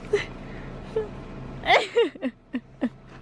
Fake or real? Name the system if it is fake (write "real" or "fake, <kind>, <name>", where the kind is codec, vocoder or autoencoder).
real